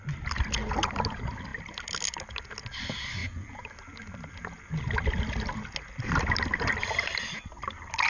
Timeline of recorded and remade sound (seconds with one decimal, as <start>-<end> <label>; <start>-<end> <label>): 0.0-3.2 recorded; 3.2-4.3 remade; 4.3-8.1 recorded